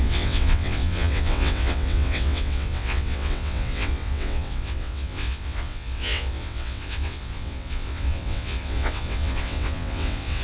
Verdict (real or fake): fake